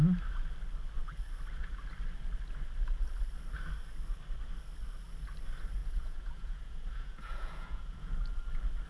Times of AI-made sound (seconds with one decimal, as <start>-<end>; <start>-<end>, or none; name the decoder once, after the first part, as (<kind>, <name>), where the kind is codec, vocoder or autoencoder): 5.8-8.1 (vocoder, Vocos)